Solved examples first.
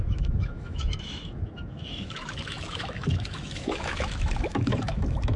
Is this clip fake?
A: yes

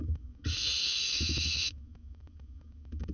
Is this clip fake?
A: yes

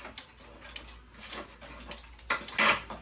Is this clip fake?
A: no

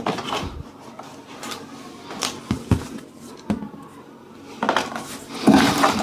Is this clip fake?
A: no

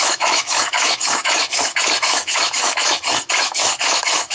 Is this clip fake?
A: yes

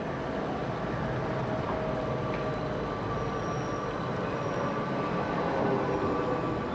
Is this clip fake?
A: no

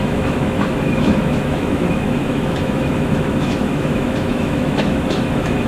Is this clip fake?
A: yes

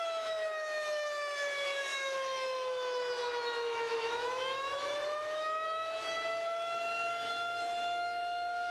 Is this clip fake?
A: yes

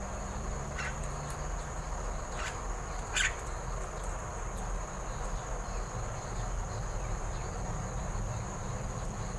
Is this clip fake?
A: no